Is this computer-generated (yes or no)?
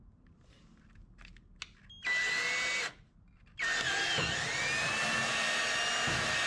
no